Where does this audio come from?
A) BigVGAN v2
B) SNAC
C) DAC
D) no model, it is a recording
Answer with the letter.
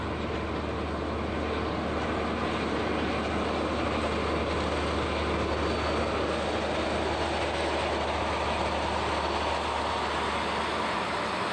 D